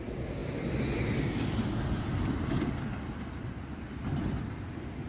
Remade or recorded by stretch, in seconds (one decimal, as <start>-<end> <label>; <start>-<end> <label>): 0.0-5.1 recorded

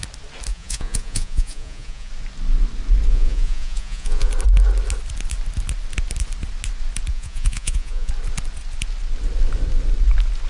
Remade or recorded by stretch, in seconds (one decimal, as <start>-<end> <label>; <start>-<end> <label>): 0.0-0.5 recorded; 0.5-2.1 remade; 2.1-3.1 recorded; 3.1-4.3 remade; 4.3-7.1 recorded; 7.1-8.1 remade; 8.1-10.5 recorded

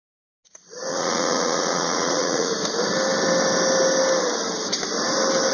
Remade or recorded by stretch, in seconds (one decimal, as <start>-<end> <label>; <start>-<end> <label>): 0.0-0.9 recorded; 0.9-2.5 remade; 2.5-5.5 recorded